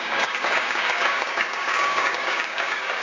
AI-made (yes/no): yes